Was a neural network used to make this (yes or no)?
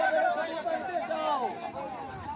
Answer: no